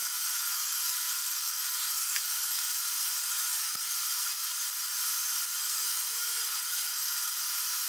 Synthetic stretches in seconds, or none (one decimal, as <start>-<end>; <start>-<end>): 0.0-3.1; 3.5-4.5; 5.6-7.4